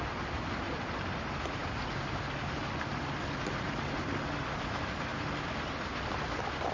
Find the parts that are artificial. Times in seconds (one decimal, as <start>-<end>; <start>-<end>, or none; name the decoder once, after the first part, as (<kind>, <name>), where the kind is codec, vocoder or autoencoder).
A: none